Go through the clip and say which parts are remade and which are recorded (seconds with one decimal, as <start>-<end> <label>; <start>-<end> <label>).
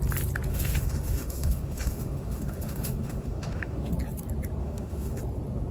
0.0-0.5 recorded; 0.5-3.9 remade; 3.9-4.6 recorded; 4.6-5.2 remade; 5.2-5.7 recorded